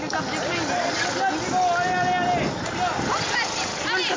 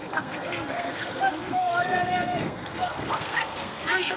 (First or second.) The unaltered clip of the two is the first